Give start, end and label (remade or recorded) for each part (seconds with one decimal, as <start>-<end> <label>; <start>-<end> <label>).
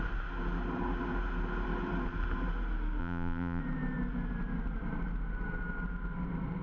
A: 0.0-3.0 recorded; 3.0-3.6 remade; 3.6-6.6 recorded